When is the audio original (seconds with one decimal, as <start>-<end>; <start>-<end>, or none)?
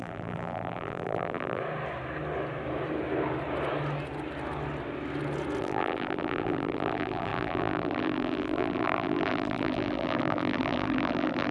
1.6-5.6